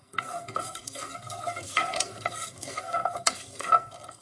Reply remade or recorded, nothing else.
remade